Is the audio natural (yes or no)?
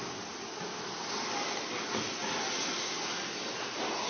yes